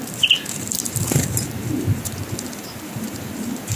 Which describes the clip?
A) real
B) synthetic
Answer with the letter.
B